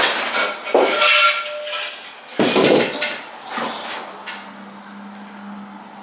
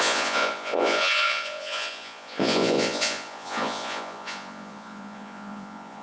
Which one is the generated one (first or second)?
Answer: second